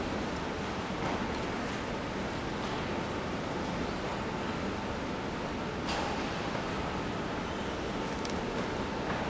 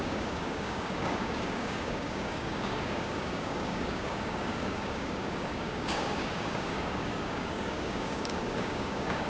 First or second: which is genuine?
first